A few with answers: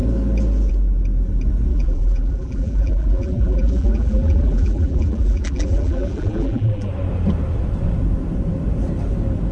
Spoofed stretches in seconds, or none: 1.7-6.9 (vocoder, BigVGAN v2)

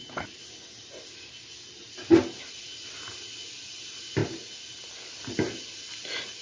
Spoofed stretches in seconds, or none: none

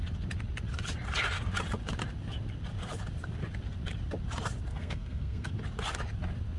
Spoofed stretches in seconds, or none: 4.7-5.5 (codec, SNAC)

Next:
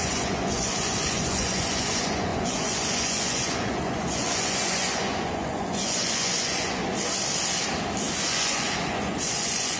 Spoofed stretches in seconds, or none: 0.0-6.8 (vocoder, Vocos); 8.2-9.8